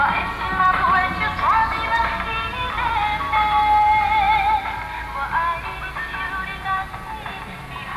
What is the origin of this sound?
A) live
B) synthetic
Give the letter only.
A